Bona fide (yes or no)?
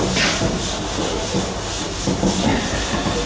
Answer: yes